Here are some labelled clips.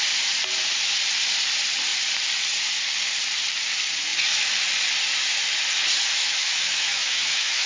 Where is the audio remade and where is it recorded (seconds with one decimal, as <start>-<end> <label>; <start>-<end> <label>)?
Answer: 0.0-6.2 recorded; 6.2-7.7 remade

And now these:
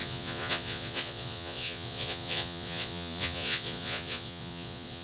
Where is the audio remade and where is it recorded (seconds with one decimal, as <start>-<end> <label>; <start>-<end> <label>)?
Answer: 0.0-5.0 remade

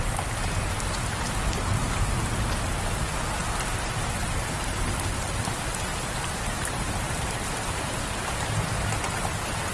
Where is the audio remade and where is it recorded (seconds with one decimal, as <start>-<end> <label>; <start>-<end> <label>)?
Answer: 0.0-3.4 recorded; 3.4-4.1 remade; 4.1-5.9 recorded; 5.9-8.3 remade; 8.3-9.7 recorded

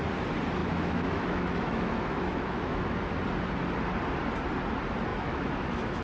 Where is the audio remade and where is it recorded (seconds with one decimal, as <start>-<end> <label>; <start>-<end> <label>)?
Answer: 0.0-0.6 recorded; 0.6-3.1 remade; 3.1-5.1 recorded; 5.1-6.0 remade

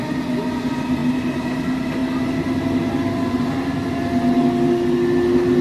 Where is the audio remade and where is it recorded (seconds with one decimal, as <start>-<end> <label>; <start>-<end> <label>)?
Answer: 0.0-5.6 recorded

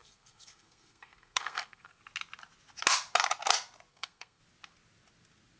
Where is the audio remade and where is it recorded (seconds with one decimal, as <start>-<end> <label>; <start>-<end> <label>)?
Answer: 0.0-2.0 remade; 2.0-3.9 recorded; 3.9-4.4 remade; 4.4-5.6 recorded

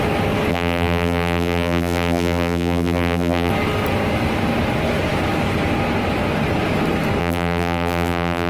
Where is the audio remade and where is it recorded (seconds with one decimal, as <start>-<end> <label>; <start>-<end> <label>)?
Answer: 0.0-0.5 recorded; 0.5-3.5 remade; 3.5-7.2 recorded; 7.2-8.5 remade